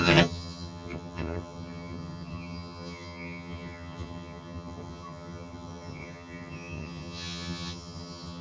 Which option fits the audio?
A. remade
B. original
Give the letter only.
A